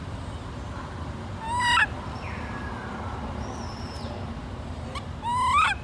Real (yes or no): yes